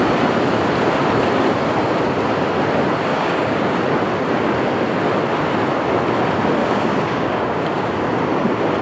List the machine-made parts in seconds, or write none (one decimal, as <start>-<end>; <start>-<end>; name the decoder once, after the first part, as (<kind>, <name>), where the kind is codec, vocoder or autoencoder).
3.1-3.8 (codec, DAC); 6.6-7.9